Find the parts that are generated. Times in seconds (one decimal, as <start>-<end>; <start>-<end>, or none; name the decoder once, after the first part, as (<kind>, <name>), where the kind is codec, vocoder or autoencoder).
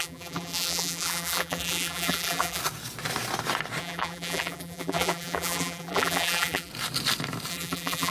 0.0-2.6 (vocoder, BigVGAN v2); 3.8-6.7; 7.5-8.1